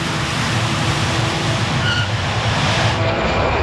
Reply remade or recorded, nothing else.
remade